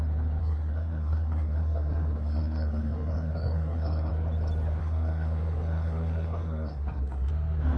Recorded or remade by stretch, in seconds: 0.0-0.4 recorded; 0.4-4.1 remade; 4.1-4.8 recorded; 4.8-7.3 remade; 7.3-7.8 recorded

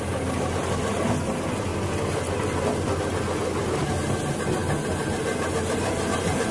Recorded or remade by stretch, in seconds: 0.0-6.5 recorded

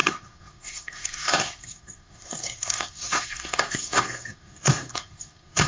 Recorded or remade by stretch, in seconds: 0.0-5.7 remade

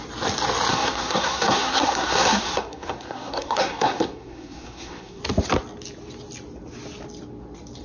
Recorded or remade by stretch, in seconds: 0.0-0.7 recorded; 0.7-5.2 remade; 5.2-7.8 recorded

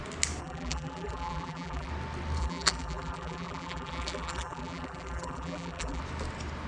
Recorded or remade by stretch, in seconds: 0.0-0.4 recorded; 0.4-1.9 remade; 1.9-2.4 recorded; 2.4-6.0 remade; 6.0-6.7 recorded

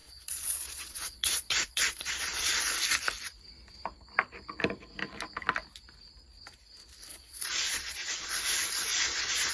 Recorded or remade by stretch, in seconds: 0.0-2.6 remade; 2.6-7.1 recorded; 7.1-8.3 remade; 8.3-8.9 recorded; 8.9-9.5 remade

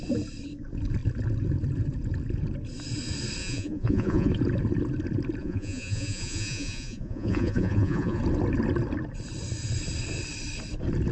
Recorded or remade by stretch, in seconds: 0.0-3.4 recorded; 3.4-4.3 remade; 4.3-5.4 recorded; 5.4-8.2 remade; 8.2-11.1 recorded